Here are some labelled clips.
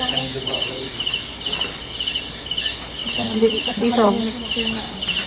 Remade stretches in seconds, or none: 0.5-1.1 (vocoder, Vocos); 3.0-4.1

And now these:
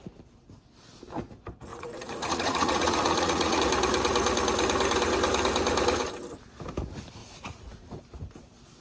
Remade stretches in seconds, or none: 1.7-3.6 (vocoder, Vocos); 7.2-8.0

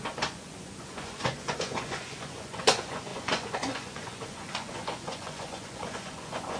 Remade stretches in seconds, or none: 0.0-6.6 (vocoder, Vocos)

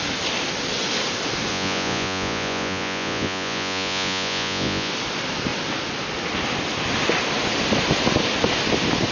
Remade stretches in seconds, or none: 1.5-4.9 (vocoder, Vocos)

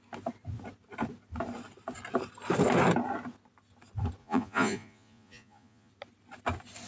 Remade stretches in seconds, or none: 4.2-5.9 (vocoder, Vocos)